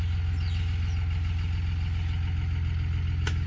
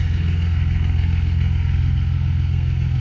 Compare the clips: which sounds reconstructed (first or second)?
second